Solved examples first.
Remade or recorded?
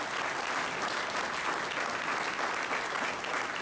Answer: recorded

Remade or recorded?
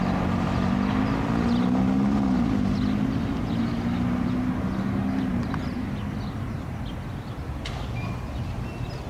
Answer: recorded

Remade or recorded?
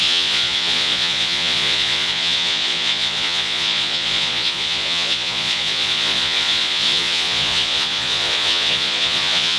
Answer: remade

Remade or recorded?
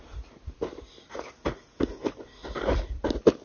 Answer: recorded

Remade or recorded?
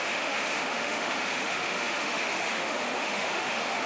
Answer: remade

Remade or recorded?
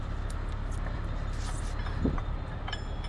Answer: recorded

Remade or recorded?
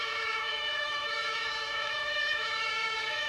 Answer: remade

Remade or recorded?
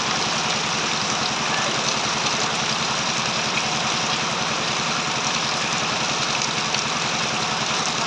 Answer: remade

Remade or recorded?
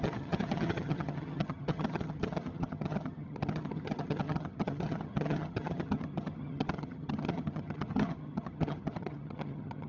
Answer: remade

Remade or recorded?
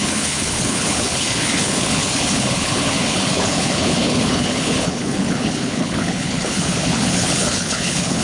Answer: remade